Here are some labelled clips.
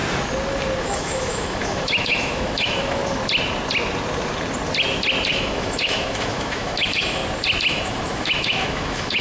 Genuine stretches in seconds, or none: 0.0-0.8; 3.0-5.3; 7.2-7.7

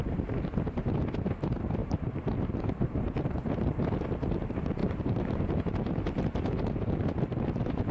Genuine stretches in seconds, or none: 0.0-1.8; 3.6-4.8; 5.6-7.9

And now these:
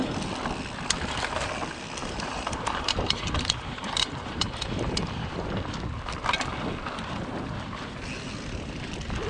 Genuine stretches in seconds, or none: 0.0-2.0; 5.5-9.3